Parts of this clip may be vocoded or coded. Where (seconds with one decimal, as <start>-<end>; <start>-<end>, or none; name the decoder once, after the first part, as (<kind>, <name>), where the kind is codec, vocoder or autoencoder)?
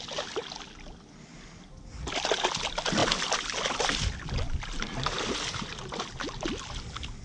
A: none